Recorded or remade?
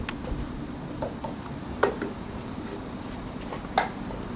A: recorded